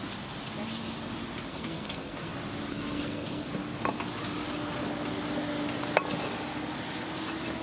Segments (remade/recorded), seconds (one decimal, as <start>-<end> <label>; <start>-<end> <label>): 0.0-1.5 recorded; 1.5-2.3 remade; 2.3-2.7 recorded; 2.7-3.5 remade; 3.5-7.6 recorded